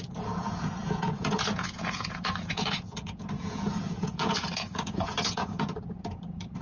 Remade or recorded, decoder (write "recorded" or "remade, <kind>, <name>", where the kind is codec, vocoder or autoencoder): remade, vocoder, Vocos